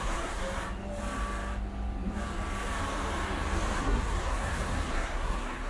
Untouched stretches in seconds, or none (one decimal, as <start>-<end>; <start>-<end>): 0.4-3.8